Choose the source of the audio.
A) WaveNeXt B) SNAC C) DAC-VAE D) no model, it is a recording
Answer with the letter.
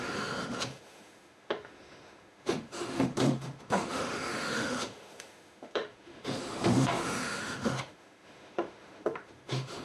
C